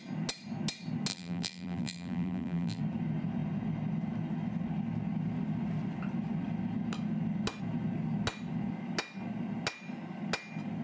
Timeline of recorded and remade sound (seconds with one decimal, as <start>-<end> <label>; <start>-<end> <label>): 0.0-1.1 recorded; 1.1-2.8 remade; 2.8-10.8 recorded